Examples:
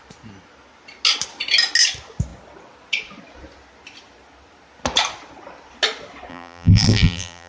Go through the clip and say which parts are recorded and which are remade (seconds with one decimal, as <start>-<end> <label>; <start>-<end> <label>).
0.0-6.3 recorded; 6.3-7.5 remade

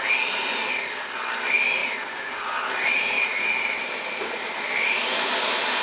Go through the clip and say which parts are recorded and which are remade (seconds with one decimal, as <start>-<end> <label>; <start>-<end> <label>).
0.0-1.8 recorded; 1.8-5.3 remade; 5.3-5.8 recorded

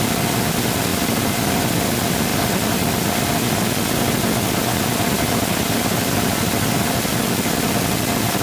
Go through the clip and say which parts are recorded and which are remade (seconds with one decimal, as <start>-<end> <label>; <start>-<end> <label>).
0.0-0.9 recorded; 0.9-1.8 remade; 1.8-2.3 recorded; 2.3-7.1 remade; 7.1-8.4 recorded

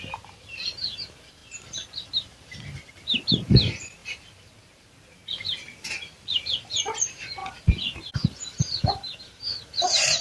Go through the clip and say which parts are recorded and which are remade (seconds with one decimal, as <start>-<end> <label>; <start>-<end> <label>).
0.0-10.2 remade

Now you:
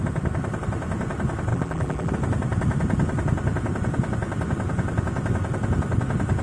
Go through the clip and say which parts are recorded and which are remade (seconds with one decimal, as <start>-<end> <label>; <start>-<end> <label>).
0.0-1.5 recorded; 1.5-2.1 remade; 2.1-6.4 recorded

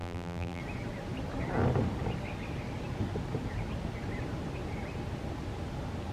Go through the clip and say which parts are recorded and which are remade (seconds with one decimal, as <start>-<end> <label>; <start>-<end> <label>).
0.0-0.6 remade; 0.6-6.1 recorded

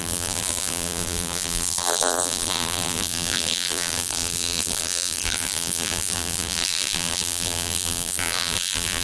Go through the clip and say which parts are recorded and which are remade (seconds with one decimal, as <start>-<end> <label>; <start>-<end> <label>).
0.0-9.0 remade